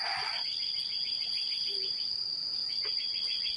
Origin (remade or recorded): recorded